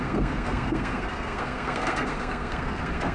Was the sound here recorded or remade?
remade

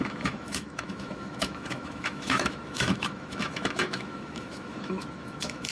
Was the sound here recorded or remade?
remade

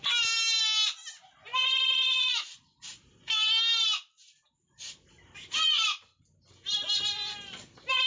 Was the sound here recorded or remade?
recorded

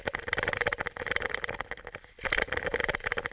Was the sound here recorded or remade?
recorded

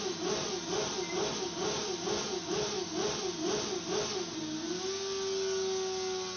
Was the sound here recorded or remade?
recorded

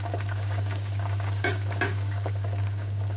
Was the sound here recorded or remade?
remade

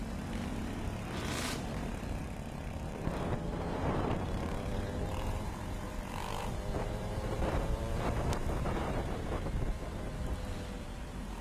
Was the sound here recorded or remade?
remade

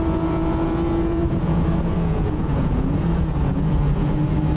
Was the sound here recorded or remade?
remade